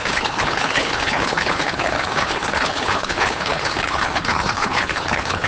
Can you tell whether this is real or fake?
fake